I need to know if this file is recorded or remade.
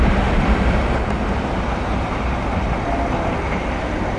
recorded